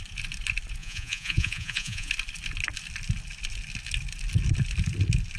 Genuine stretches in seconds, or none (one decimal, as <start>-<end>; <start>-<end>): 0.0-0.8; 2.1-5.4